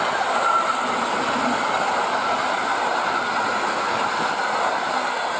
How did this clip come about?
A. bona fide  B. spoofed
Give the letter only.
A